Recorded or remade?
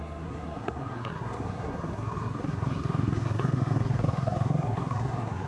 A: remade